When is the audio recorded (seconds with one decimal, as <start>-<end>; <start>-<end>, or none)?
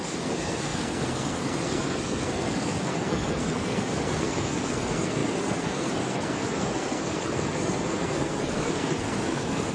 none